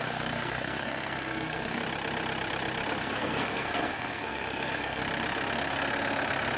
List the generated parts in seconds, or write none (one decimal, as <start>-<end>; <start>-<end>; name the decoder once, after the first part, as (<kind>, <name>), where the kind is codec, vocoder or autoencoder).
0.0-1.8 (codec, SNAC); 3.0-5.0